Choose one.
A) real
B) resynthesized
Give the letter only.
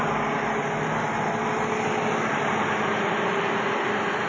A